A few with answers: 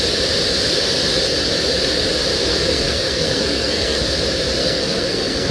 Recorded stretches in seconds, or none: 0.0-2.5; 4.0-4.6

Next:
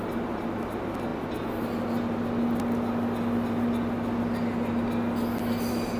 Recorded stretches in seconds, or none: 0.0-6.0

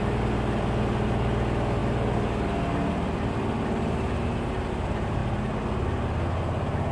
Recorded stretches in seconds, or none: 0.0-6.9

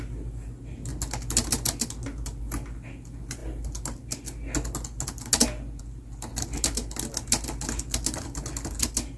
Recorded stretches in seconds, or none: 0.0-9.2

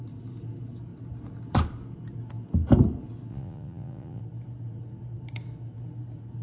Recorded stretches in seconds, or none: 0.0-3.3; 4.2-6.4

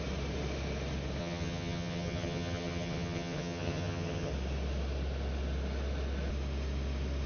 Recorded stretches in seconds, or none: 0.0-1.2; 4.3-7.3

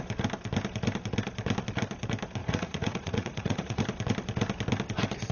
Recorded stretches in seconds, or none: 0.0-2.4; 3.8-5.3